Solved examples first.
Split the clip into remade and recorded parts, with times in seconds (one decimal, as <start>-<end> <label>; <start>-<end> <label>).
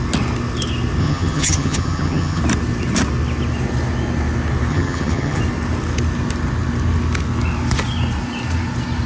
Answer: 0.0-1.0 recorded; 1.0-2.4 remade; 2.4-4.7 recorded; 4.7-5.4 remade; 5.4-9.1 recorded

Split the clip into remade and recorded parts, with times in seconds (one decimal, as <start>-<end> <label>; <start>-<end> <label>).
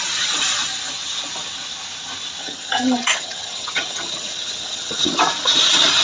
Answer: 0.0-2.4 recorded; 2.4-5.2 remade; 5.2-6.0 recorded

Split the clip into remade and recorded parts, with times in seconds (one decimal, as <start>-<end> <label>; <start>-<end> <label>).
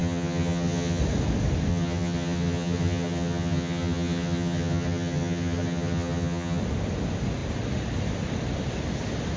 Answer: 0.0-1.0 remade; 1.0-1.7 recorded; 1.7-6.6 remade; 6.6-9.4 recorded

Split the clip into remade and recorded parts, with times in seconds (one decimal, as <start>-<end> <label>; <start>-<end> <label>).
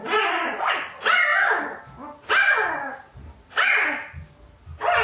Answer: 0.0-5.0 recorded